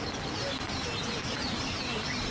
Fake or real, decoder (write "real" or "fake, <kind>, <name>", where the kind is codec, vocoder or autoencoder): real